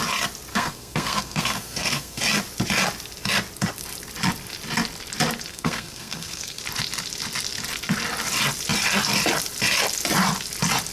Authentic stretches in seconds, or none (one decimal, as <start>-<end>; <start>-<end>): 0.0-0.5; 2.2-5.5; 6.6-10.9